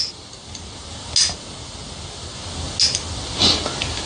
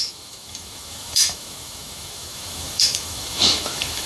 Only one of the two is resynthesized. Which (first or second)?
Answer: second